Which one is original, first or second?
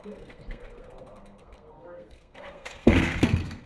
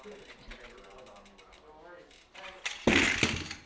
second